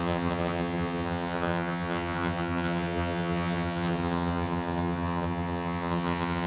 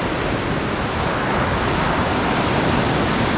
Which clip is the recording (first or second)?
second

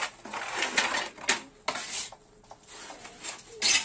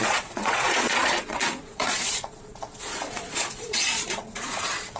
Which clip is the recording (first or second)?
first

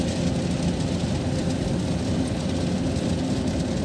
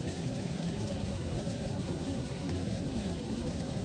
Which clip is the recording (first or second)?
first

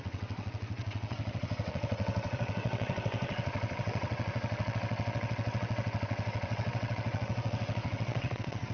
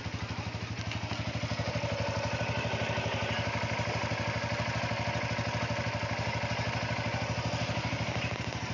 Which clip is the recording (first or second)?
second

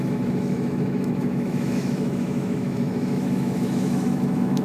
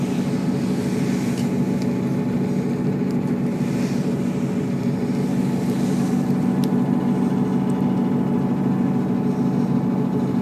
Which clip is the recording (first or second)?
second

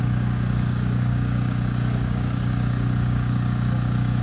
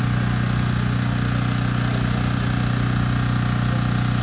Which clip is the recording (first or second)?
second